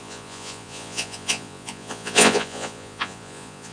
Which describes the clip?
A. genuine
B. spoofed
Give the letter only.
B